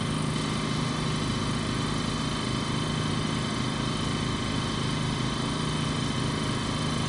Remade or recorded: recorded